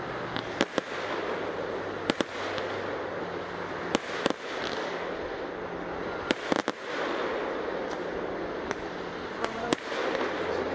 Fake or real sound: real